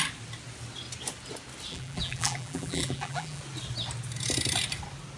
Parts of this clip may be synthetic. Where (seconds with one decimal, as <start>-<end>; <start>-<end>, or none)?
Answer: 1.7-3.4